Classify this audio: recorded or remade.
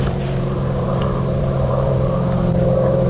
remade